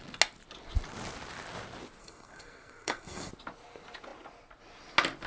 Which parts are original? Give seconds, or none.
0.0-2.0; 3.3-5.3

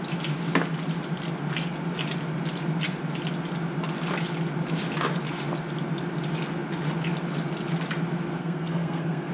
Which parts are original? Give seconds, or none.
0.0-8.4